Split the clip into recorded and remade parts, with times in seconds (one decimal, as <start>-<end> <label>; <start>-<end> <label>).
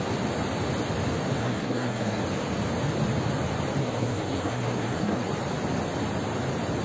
0.0-1.4 recorded; 1.4-2.2 remade; 2.2-3.8 recorded; 3.8-5.3 remade; 5.3-6.8 recorded